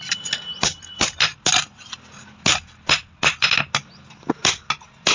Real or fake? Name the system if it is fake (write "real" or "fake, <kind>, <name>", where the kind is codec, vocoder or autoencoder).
real